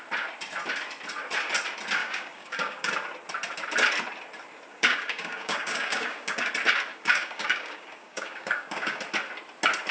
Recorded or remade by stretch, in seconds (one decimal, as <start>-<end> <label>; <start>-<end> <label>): 0.0-2.0 recorded; 2.0-2.9 remade; 2.9-4.7 recorded; 4.7-6.5 remade; 6.5-6.9 recorded; 6.9-9.0 remade; 9.0-9.9 recorded